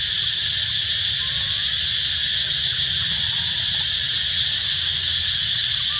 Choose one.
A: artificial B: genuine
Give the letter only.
B